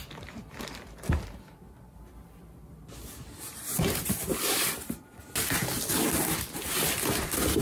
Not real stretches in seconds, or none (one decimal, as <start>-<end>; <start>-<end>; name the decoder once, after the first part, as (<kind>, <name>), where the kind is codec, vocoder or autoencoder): 3.5-5.2 (vocoder, BigVGAN v2)